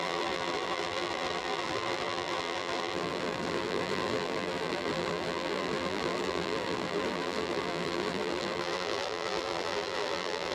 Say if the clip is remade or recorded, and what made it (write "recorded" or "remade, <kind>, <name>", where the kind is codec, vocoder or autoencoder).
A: remade, vocoder, BigVGAN v2